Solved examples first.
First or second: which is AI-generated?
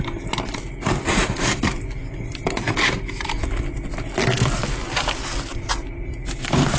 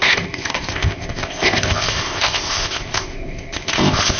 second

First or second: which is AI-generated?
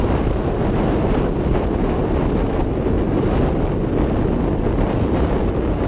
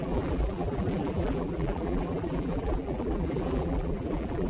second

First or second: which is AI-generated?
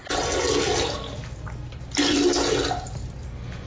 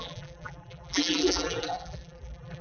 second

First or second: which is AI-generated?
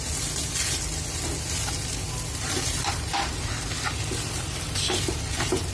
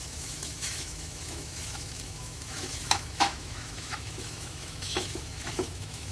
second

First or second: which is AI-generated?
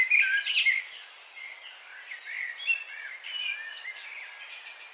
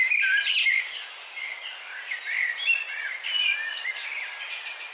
second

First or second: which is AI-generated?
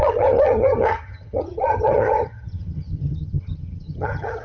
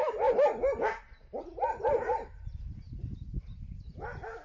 first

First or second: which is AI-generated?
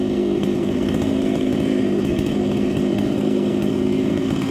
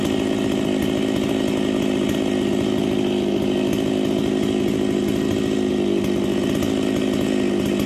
first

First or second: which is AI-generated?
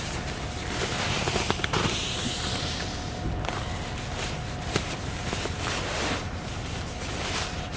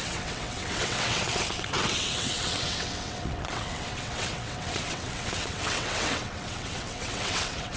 second